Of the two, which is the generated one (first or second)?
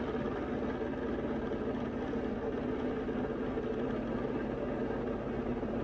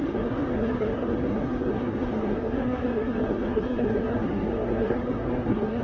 second